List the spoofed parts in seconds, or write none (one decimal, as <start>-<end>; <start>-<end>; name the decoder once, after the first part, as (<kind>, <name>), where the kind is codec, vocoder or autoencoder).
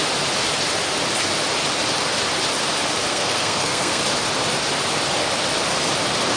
3.1-4.0 (codec, SNAC)